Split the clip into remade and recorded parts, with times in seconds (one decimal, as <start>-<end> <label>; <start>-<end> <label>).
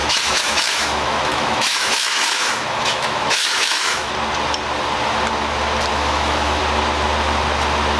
0.0-4.1 remade; 4.1-5.9 recorded; 5.9-6.6 remade; 6.6-8.0 recorded